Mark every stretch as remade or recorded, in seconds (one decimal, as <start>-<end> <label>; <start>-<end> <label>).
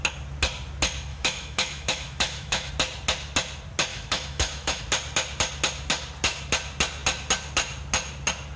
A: 0.0-1.1 recorded; 1.1-2.7 remade; 2.7-3.9 recorded; 3.9-4.8 remade; 4.8-8.6 recorded